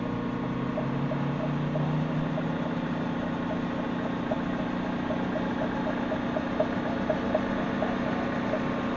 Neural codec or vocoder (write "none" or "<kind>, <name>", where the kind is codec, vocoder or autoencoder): none